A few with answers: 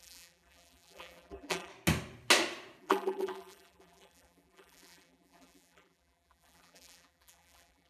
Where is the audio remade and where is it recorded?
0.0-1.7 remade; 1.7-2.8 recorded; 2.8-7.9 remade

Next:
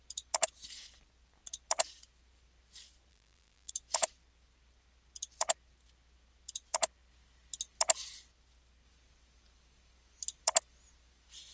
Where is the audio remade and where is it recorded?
0.0-3.1 recorded; 3.1-3.7 remade; 3.7-11.5 recorded

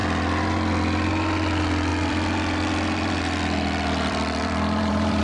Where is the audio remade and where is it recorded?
0.0-1.9 recorded; 1.9-5.2 remade

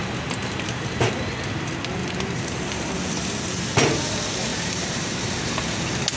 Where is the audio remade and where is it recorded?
0.0-1.3 remade; 1.3-2.0 recorded; 2.0-3.0 remade; 3.0-4.5 recorded; 4.5-5.3 remade; 5.3-6.2 recorded